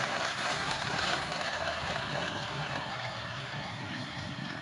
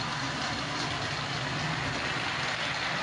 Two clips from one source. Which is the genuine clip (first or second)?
second